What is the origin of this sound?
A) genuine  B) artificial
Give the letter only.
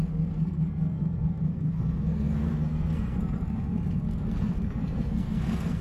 B